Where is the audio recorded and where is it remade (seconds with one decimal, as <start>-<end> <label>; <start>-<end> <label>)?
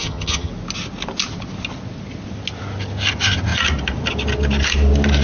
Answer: 0.0-0.5 remade; 0.5-5.2 recorded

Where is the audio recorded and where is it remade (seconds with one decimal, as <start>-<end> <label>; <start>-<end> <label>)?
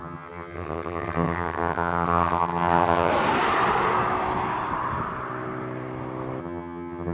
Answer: 0.0-3.1 remade; 3.1-6.4 recorded; 6.4-7.1 remade